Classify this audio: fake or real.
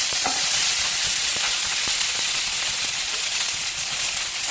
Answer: fake